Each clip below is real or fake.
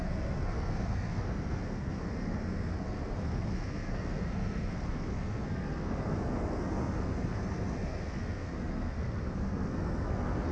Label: fake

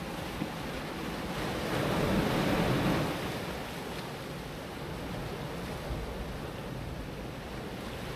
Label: real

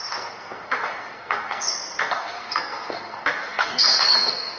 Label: fake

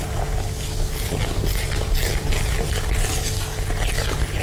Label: real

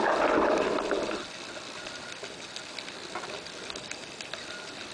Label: real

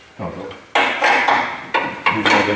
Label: real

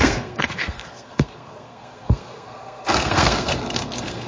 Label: fake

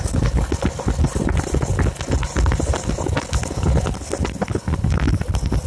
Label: real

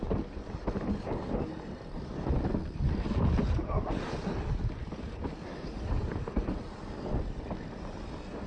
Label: real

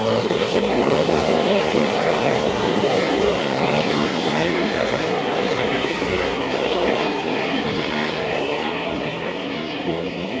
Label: fake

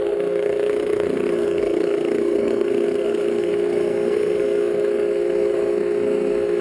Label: fake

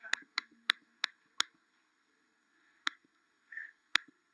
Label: fake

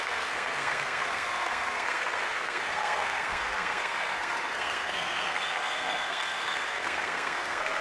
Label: fake